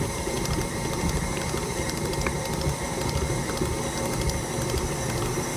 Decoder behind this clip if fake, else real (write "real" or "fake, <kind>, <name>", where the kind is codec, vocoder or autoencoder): fake, vocoder, BigVGAN v2